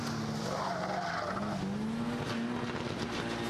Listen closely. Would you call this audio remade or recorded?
recorded